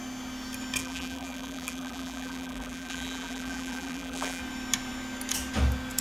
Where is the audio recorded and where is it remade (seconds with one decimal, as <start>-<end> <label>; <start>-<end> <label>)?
0.0-0.8 recorded; 0.8-4.4 remade; 4.4-6.0 recorded